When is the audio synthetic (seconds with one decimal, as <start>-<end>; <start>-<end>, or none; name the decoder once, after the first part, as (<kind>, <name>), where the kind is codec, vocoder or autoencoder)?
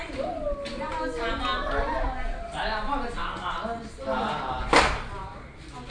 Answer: none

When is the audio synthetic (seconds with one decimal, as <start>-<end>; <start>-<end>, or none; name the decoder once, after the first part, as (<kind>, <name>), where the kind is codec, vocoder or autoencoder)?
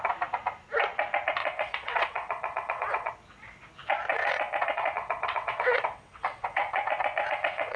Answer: 1.4-3.1 (vocoder, WaveNeXt); 4.1-7.8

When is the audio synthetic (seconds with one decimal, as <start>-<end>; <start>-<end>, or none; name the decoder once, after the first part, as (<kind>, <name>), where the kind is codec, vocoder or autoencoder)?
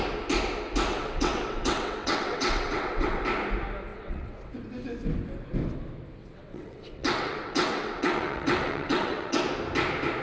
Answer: 0.9-3.2 (vocoder, WaveNeXt); 3.9-4.5; 6.2-9.4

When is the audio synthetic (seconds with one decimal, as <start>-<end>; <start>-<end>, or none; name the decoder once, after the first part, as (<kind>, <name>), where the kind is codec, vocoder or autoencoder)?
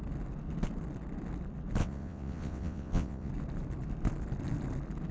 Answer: 1.8-3.3 (vocoder, WaveNeXt)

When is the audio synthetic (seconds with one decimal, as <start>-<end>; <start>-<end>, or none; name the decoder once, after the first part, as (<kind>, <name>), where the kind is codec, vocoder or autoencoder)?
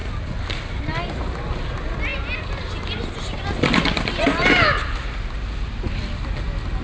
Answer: none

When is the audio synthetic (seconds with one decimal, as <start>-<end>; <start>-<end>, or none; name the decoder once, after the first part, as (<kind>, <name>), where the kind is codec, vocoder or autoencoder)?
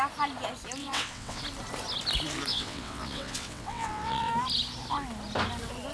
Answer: 0.8-1.4 (vocoder, WaveNeXt); 2.5-4.3